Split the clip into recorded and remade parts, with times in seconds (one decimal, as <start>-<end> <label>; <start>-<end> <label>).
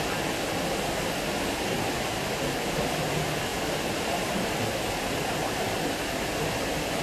0.0-3.5 recorded; 3.5-5.0 remade; 5.0-7.0 recorded